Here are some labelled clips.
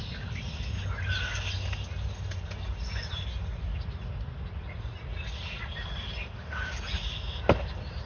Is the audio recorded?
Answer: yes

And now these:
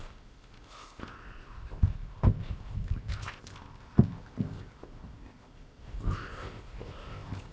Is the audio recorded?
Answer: no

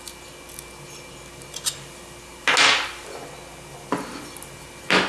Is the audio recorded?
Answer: yes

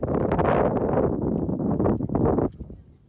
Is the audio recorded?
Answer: yes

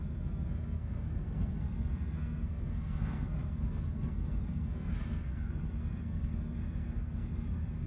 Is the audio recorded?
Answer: no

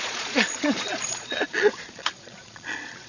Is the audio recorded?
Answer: no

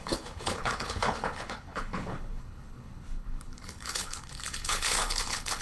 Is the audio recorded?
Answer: no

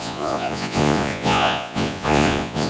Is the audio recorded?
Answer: no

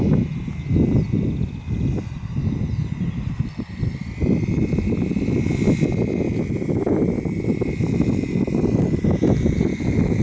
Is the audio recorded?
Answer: yes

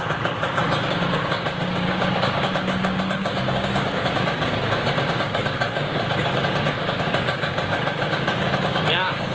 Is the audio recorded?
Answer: no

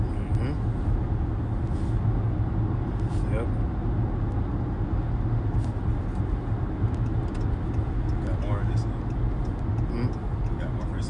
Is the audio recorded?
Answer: yes